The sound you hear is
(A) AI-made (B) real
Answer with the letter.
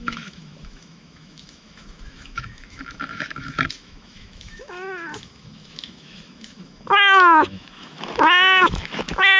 A